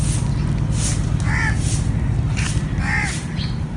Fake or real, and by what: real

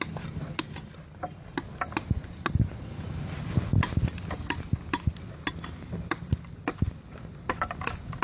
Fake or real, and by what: real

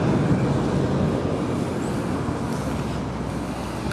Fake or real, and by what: real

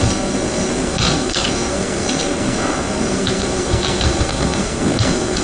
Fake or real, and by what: fake, codec, SNAC